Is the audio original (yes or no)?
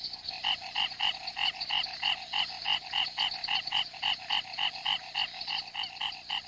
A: yes